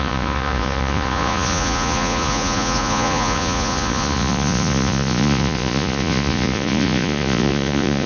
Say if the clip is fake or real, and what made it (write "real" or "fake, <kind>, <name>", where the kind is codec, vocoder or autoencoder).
fake, vocoder, Vocos